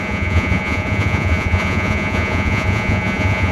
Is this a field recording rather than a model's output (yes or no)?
no